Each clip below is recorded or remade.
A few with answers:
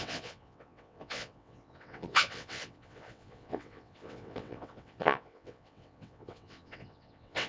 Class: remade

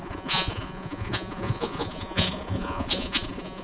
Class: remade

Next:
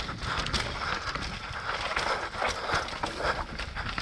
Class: recorded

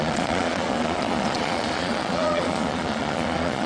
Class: remade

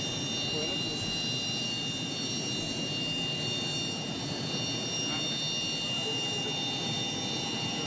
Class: recorded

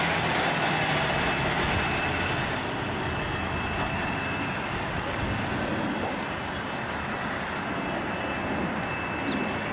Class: recorded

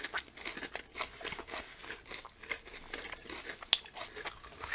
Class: recorded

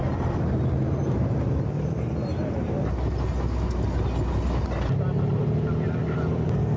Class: recorded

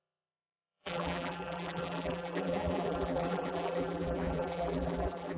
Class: remade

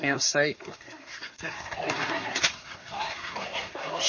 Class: remade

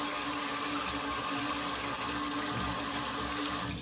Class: recorded